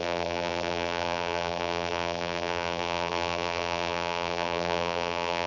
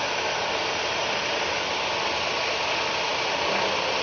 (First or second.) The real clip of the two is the second